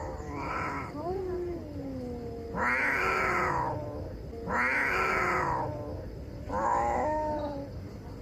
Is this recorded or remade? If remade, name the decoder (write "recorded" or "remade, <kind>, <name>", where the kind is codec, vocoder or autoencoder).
recorded